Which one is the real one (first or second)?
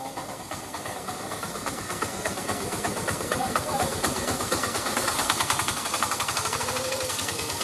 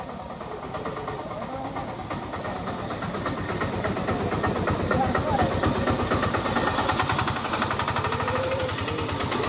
second